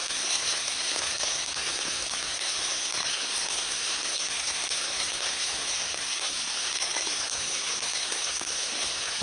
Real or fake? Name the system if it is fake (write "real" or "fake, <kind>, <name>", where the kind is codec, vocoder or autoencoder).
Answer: fake, codec, SNAC